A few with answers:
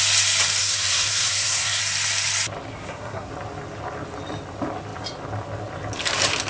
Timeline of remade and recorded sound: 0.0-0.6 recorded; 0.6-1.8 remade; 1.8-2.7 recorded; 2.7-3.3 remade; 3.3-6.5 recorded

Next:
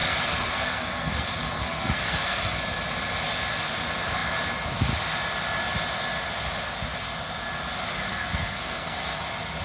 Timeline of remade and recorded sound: 0.0-2.6 remade; 2.6-8.1 recorded; 8.1-9.2 remade; 9.2-9.6 recorded

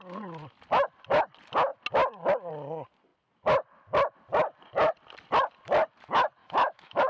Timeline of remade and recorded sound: 0.0-6.4 recorded; 6.4-7.1 remade

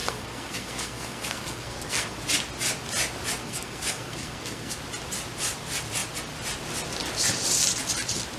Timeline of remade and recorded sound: 0.0-2.2 remade; 2.2-3.4 recorded; 3.4-4.8 remade; 4.8-8.4 recorded

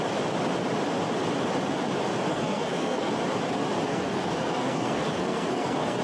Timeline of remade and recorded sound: 0.0-2.3 recorded; 2.3-3.1 remade; 3.1-3.9 recorded; 3.9-6.0 remade

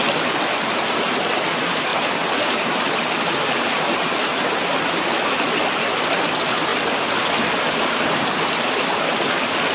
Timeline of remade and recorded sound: 0.0-1.9 recorded; 1.9-5.5 remade; 5.5-9.7 recorded

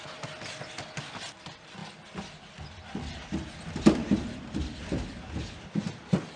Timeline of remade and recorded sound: 0.0-6.4 recorded

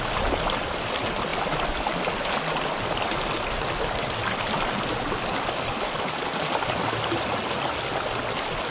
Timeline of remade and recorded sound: 0.0-8.7 recorded